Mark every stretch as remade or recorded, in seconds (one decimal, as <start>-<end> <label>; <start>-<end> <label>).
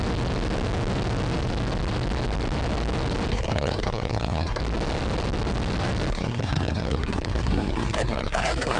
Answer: 0.0-3.3 recorded; 3.3-4.6 remade; 4.6-6.1 recorded; 6.1-8.8 remade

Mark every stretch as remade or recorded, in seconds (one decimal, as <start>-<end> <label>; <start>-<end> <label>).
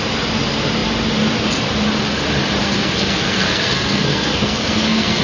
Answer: 0.0-2.6 recorded; 2.6-5.2 remade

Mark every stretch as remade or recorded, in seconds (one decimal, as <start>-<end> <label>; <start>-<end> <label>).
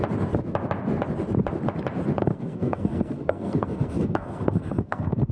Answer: 0.0-2.2 recorded; 2.2-5.3 remade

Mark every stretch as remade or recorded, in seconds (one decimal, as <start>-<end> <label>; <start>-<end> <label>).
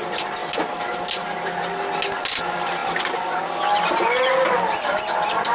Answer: 0.0-5.5 recorded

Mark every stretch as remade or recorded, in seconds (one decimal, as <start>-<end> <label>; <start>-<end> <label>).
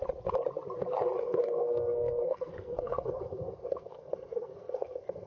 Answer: 0.0-1.2 recorded; 1.2-5.3 remade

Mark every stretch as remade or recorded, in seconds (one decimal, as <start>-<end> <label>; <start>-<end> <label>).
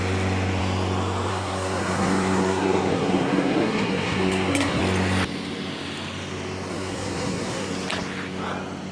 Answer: 0.0-1.3 recorded; 1.3-4.8 remade; 4.8-6.7 recorded; 6.7-7.7 remade; 7.7-8.9 recorded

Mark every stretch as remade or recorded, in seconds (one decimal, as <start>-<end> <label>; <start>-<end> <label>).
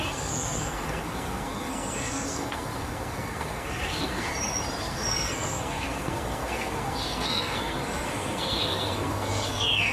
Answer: 0.0-4.3 remade; 4.3-4.8 recorded; 4.8-9.9 remade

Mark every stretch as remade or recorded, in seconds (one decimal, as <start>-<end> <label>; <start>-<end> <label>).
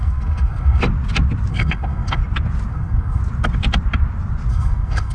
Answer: 0.0-0.8 remade; 0.8-1.5 recorded; 1.5-2.2 remade; 2.2-2.7 recorded; 2.7-3.2 remade; 3.2-4.5 recorded; 4.5-5.1 remade